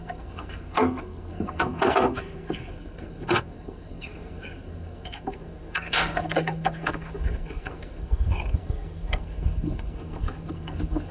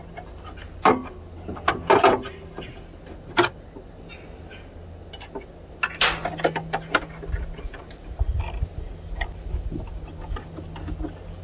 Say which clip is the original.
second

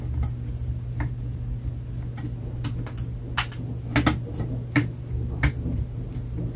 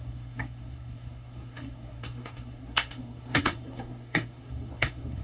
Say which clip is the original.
first